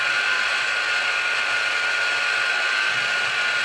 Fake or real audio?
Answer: real